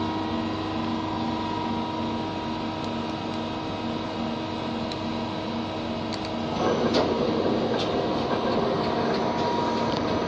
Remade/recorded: recorded